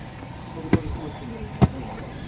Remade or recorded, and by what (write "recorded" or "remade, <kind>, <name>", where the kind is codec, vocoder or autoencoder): recorded